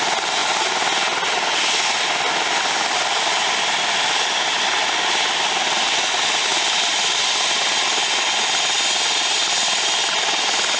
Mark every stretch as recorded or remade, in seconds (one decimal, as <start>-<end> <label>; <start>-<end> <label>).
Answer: 0.0-10.8 recorded

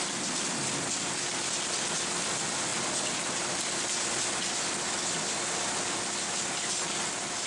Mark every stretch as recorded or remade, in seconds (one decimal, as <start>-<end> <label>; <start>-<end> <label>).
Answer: 0.0-7.5 recorded

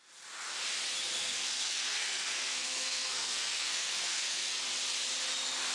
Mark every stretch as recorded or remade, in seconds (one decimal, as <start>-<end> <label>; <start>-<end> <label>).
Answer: 0.0-1.2 recorded; 1.2-4.6 remade; 4.6-5.7 recorded

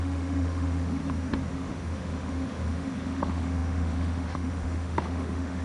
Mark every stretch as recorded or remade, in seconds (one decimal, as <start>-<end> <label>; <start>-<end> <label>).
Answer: 0.0-1.0 remade; 1.0-1.5 recorded; 1.5-5.6 remade

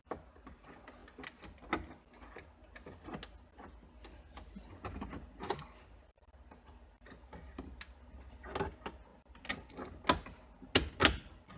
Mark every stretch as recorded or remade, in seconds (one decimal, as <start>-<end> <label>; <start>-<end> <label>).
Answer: 0.0-11.6 recorded

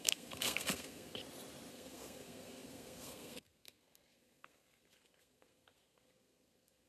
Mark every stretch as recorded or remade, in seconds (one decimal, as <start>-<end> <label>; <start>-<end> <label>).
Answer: 0.0-1.2 remade; 1.2-1.7 recorded; 1.7-6.9 remade

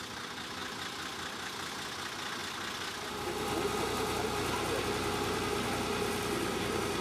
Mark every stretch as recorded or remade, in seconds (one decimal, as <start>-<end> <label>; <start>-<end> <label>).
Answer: 0.0-7.0 recorded